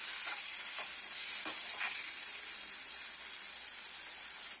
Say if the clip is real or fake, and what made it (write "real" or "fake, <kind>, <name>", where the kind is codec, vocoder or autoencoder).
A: real